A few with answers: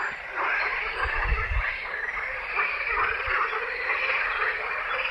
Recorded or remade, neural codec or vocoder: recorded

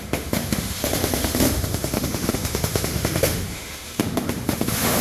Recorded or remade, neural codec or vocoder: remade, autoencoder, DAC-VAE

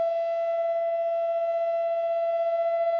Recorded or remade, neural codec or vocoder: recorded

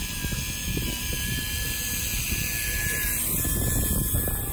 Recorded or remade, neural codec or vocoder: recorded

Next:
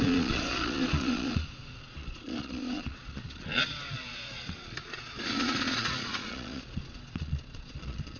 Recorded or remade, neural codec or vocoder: remade, vocoder, Vocos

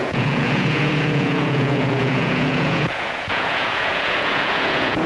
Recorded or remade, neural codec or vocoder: remade, vocoder, Vocos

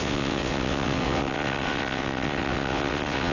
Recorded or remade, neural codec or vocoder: remade, vocoder, WaveNeXt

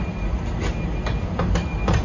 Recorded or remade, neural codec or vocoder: remade, vocoder, BigVGAN v2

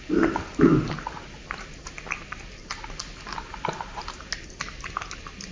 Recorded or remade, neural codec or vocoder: recorded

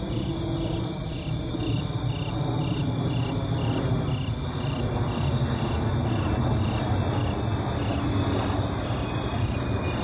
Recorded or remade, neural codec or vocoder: recorded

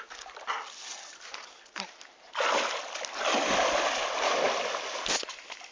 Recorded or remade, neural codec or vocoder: recorded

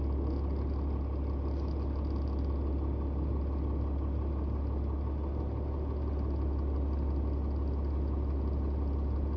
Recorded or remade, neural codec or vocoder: recorded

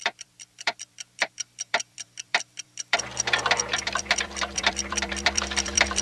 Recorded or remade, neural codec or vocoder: remade, vocoder, BigVGAN v2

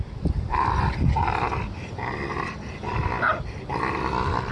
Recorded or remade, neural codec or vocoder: recorded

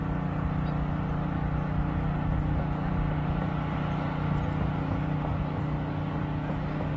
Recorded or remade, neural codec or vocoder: recorded